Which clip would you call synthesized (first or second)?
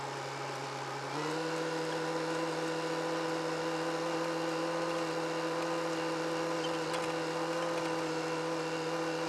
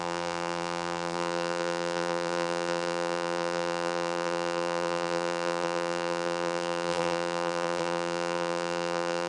second